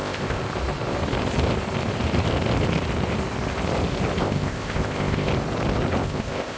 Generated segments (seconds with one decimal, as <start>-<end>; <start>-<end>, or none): 0.0-0.4; 4.2-5.3; 6.0-6.6